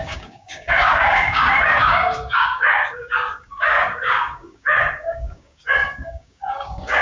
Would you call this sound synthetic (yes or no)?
yes